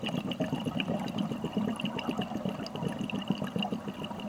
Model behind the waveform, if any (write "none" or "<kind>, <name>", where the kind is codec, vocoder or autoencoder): none